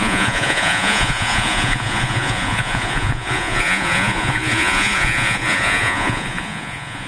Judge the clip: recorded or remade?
remade